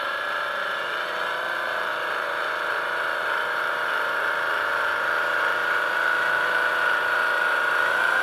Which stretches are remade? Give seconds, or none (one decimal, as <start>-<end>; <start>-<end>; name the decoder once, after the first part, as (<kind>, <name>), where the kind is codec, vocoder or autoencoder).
0.0-8.2 (vocoder, BigVGAN v2)